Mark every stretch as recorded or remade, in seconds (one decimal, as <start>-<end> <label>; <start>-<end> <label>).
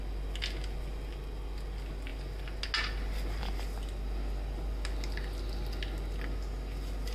0.0-7.1 recorded